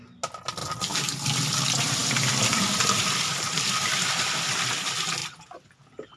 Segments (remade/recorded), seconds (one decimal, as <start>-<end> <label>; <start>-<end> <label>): 0.0-0.6 recorded; 0.6-1.5 remade; 1.5-2.0 recorded; 2.0-4.8 remade; 4.8-5.2 recorded; 5.2-5.8 remade; 5.8-6.2 recorded